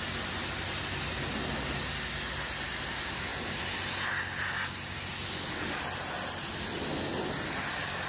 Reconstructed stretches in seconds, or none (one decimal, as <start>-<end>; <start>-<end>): none